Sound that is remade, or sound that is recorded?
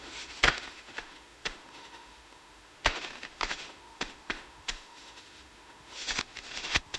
remade